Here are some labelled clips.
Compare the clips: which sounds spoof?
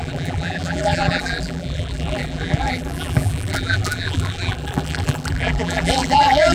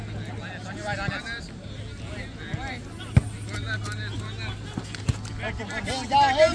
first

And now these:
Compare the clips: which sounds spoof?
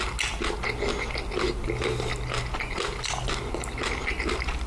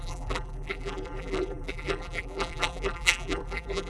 second